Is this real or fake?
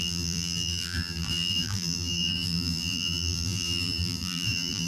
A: fake